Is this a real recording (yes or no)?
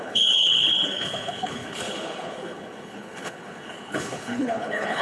no